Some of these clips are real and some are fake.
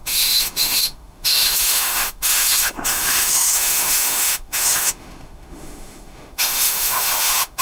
fake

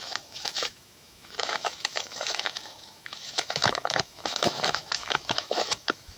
fake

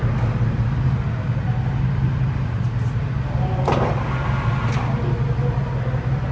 real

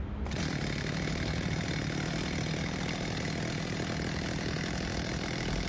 real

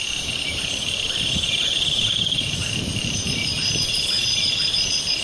fake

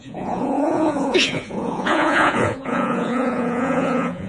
fake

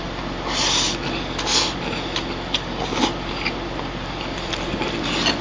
real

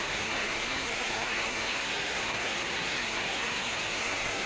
fake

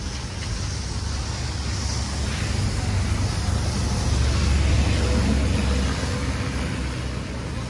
real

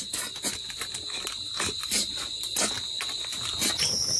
real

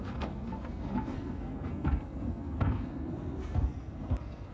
fake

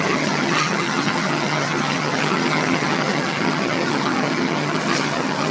fake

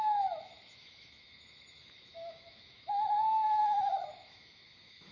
fake